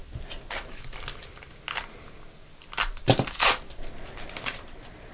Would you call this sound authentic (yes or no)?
yes